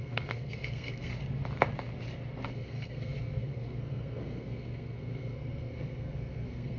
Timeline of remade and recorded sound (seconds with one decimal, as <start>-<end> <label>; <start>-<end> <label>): 0.0-1.1 remade; 1.1-2.5 recorded; 2.5-6.8 remade